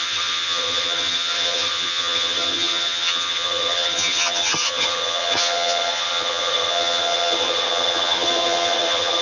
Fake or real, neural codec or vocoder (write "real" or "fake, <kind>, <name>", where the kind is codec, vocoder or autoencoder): fake, vocoder, HiFi-GAN